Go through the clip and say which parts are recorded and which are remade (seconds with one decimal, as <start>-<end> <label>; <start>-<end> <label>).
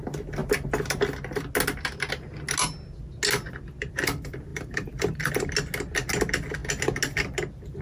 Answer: 0.0-4.5 recorded; 4.5-5.3 remade; 5.3-7.8 recorded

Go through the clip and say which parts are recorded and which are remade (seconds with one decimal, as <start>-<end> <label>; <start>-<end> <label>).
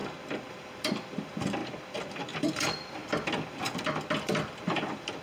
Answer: 0.0-0.5 recorded; 0.5-3.0 remade; 3.0-4.2 recorded; 4.2-5.2 remade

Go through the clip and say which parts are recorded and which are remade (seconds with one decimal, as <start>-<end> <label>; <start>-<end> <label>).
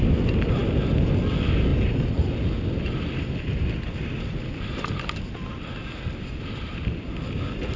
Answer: 0.0-7.8 recorded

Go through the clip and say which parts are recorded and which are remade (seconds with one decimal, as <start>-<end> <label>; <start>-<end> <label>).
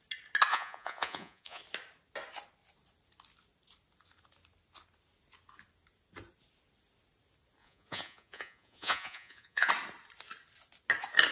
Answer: 0.0-0.5 recorded; 0.5-1.6 remade; 1.6-7.6 recorded; 7.6-9.7 remade; 9.7-11.3 recorded